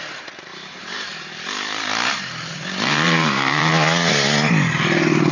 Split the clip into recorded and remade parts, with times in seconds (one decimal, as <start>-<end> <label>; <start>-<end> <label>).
0.0-0.5 recorded; 0.5-3.7 remade; 3.7-5.3 recorded